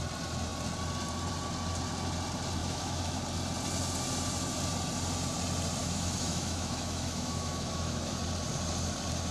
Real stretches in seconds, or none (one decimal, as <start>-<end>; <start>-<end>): 0.0-2.6; 3.2-5.8; 8.2-9.3